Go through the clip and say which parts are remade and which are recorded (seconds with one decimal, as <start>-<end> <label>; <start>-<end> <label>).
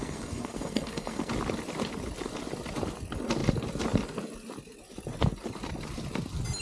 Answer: 0.0-1.3 remade; 1.3-6.6 recorded